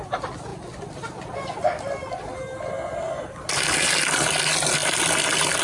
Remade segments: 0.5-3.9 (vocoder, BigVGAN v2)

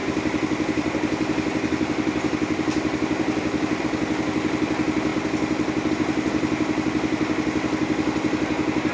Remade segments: 0.0-3.8 (vocoder, BigVGAN v2)

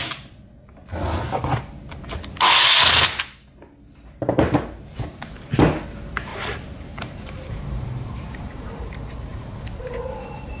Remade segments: 6.3-8.9 (vocoder, BigVGAN v2); 9.3-9.8